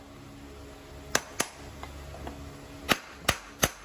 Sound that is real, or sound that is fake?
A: real